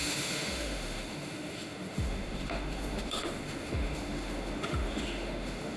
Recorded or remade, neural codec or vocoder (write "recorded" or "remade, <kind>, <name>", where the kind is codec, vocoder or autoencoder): remade, autoencoder, DAC-VAE